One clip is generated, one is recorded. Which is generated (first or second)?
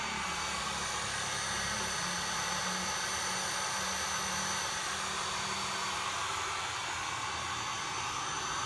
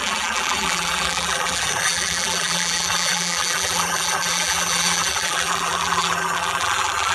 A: second